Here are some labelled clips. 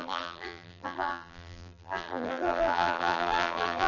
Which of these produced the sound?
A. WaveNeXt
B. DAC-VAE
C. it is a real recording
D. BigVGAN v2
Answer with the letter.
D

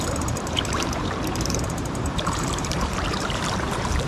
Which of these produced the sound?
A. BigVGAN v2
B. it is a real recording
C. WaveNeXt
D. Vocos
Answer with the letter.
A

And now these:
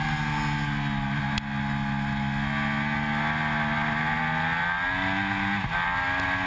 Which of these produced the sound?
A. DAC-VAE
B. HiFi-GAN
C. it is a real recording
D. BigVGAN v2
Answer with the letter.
C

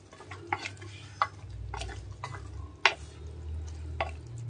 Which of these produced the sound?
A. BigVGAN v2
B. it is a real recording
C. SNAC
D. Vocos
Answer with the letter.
B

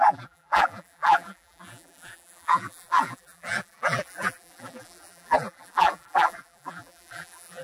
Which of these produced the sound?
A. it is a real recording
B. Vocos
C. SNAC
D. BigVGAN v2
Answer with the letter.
D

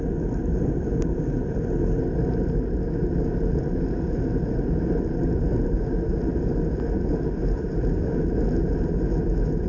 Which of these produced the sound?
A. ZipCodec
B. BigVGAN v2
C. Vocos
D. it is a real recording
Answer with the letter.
D